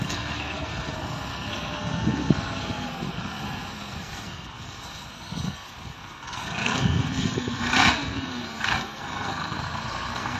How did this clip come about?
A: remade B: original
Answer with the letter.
A